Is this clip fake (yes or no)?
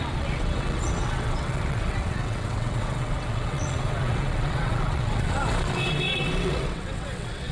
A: yes